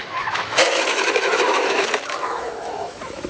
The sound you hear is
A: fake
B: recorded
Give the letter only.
A